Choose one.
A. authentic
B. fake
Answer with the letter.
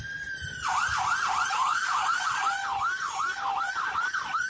A